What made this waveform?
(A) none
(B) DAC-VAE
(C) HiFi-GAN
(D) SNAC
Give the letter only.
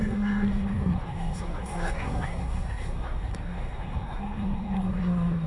D